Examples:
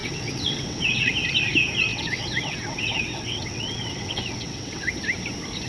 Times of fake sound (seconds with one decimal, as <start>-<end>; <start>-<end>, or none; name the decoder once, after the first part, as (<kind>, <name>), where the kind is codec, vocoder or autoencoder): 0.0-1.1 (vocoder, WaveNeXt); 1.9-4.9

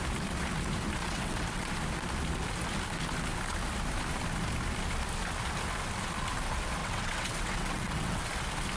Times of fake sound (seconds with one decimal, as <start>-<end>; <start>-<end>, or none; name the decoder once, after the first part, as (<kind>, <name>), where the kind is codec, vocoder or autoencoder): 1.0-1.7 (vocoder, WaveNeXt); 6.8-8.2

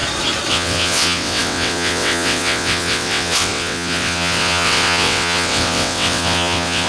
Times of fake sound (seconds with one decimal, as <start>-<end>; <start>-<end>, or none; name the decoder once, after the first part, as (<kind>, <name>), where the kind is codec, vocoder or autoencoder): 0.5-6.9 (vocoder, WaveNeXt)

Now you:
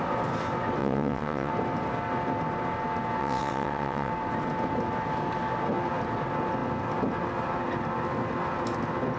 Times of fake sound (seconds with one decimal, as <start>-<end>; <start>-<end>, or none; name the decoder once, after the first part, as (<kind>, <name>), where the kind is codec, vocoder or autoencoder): 0.8-1.5 (vocoder, WaveNeXt); 3.2-4.1

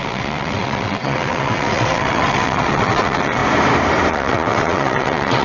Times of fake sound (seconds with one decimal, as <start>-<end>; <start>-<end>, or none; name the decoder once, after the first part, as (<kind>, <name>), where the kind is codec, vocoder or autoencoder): 0.0-3.4 (vocoder, WaveNeXt); 4.1-5.4

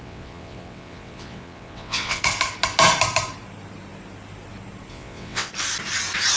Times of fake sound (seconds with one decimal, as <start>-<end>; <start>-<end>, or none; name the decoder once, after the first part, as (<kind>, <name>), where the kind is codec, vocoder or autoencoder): 0.0-2.2 (vocoder, WaveNeXt); 4.9-5.5

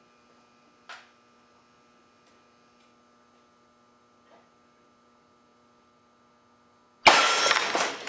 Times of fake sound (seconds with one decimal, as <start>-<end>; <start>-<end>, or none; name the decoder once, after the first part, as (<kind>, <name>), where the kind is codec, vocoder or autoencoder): none

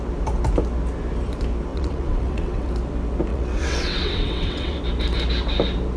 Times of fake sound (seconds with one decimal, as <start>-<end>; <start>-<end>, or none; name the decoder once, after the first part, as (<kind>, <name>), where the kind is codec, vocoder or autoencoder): 1.7-2.7 (vocoder, WaveNeXt); 3.3-4.8